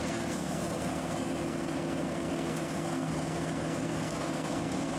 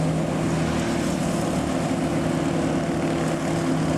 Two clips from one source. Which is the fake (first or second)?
first